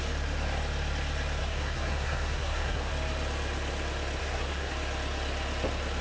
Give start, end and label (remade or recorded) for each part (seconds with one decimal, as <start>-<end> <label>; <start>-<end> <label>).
0.0-1.4 recorded; 1.4-2.9 remade; 2.9-4.2 recorded; 4.2-4.7 remade; 4.7-6.0 recorded